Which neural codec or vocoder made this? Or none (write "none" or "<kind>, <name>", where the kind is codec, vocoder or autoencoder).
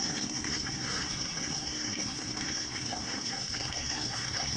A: codec, SNAC